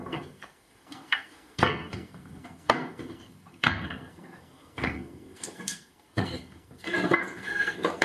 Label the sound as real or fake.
fake